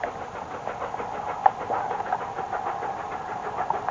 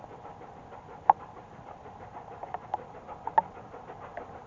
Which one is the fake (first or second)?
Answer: second